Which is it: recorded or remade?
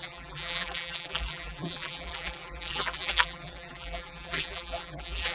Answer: remade